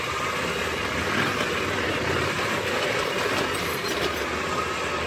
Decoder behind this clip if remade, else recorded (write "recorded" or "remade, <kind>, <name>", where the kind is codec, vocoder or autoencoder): recorded